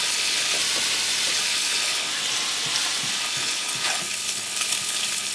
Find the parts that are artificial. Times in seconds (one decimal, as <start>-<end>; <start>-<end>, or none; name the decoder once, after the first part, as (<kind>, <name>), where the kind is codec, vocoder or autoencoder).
0.0-0.6 (codec, HILCodec); 1.3-2.1; 3.1-5.3